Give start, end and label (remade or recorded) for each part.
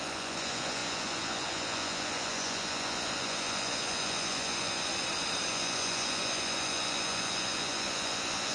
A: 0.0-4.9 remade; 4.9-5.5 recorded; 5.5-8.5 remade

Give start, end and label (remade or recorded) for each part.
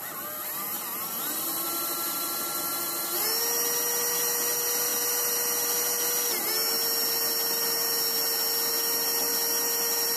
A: 0.0-10.2 recorded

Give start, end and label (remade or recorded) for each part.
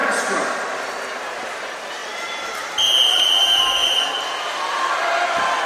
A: 0.0-2.0 recorded; 2.0-2.7 remade; 2.7-3.8 recorded; 3.8-4.9 remade; 4.9-5.7 recorded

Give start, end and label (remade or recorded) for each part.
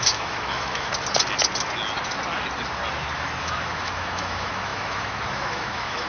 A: 0.0-0.9 remade; 0.9-3.4 recorded; 3.4-6.1 remade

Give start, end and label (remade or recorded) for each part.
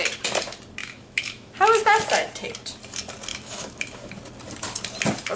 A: 0.0-0.8 recorded; 0.8-1.5 remade; 1.5-3.3 recorded; 3.3-4.1 remade; 4.1-5.4 recorded